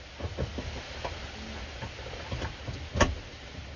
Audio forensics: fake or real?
real